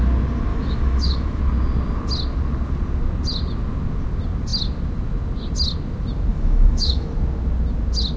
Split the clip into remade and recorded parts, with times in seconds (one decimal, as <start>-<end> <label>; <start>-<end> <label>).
0.0-0.5 recorded; 0.5-1.4 remade; 1.4-6.3 recorded; 6.3-7.1 remade; 7.1-8.2 recorded